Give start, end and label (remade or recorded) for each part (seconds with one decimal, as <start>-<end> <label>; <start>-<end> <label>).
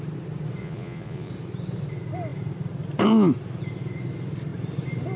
0.0-0.6 recorded; 0.6-1.3 remade; 1.3-5.2 recorded